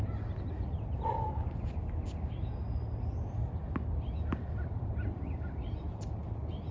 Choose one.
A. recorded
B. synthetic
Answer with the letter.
A